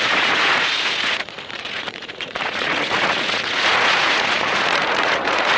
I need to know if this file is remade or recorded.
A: remade